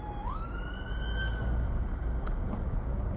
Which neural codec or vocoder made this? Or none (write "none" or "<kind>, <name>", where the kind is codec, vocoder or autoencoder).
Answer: none